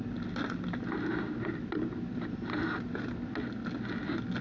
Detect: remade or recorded recorded